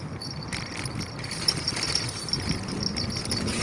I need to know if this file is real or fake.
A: real